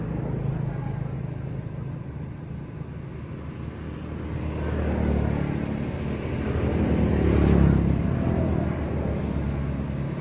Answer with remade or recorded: recorded